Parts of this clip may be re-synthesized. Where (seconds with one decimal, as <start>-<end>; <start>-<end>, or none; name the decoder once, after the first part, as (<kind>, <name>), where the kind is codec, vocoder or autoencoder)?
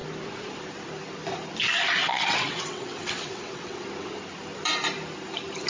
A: 2.0-3.8 (vocoder, WaveNeXt)